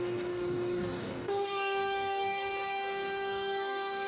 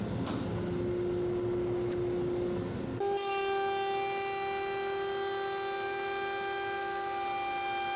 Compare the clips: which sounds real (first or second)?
second